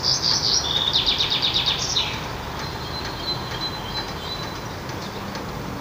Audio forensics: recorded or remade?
recorded